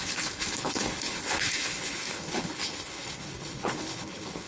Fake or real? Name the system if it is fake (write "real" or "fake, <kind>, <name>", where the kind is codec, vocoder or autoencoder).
fake, codec, HILCodec